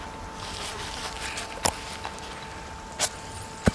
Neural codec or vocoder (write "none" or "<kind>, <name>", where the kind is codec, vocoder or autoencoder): none